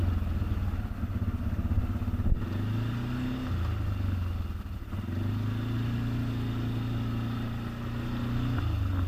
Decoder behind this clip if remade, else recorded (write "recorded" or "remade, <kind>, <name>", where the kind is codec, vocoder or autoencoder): recorded